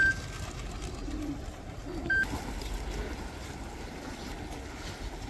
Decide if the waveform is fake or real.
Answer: real